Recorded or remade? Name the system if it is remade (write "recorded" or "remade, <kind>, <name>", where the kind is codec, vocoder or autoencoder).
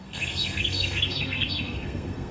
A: remade, codec, SNAC